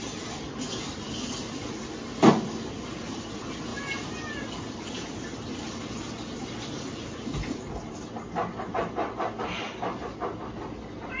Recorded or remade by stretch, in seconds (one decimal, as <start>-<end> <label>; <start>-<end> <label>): 0.0-11.2 recorded